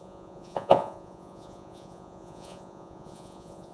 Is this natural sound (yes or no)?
no